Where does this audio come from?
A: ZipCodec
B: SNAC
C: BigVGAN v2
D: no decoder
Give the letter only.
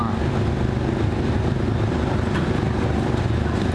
D